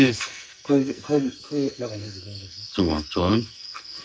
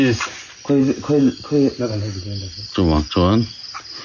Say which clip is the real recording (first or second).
second